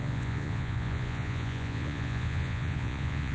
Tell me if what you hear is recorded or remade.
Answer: remade